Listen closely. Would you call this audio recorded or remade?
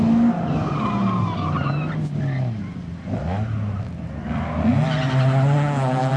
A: recorded